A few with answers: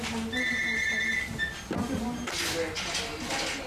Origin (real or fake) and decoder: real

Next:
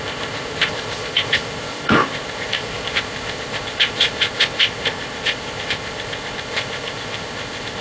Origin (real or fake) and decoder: fake, codec, ZipCodec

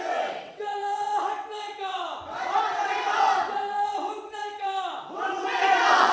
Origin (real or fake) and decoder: fake, vocoder, WaveNeXt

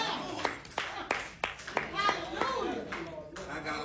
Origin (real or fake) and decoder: real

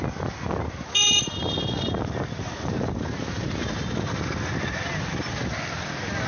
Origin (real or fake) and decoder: real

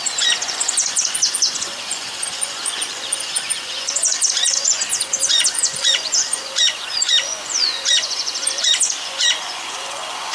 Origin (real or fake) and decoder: fake, vocoder, Vocos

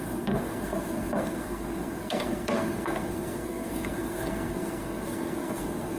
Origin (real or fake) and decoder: fake, codec, SNAC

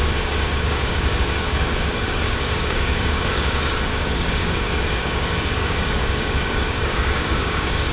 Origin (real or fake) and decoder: fake, codec, DAC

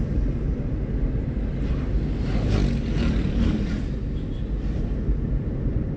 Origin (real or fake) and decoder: real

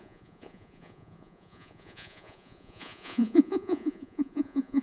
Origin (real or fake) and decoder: fake, vocoder, Vocos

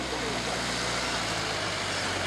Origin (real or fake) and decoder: real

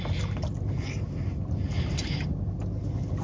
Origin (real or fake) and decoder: real